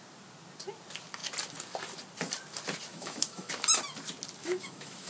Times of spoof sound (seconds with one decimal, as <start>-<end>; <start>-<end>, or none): 2.9-3.5; 4.4-5.1